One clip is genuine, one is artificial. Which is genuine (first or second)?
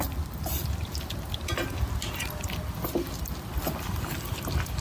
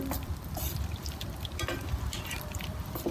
first